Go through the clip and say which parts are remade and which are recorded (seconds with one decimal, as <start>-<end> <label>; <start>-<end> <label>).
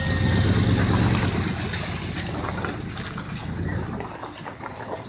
0.0-5.1 recorded